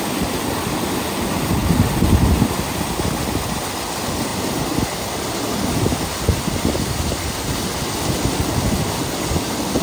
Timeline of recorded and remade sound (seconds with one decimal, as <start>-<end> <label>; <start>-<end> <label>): 0.0-9.8 recorded